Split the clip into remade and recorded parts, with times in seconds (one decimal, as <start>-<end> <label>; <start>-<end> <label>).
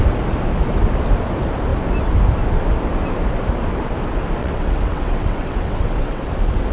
0.0-4.4 recorded; 4.4-6.3 remade; 6.3-6.7 recorded